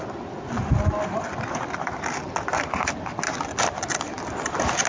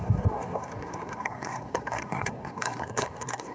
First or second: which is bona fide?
first